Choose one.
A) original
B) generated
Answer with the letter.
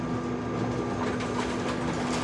A